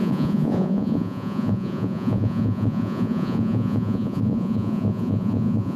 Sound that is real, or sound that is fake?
fake